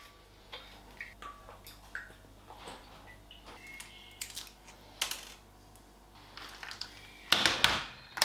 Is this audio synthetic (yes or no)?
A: no